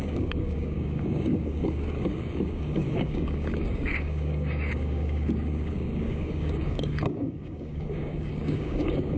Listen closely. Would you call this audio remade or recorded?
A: remade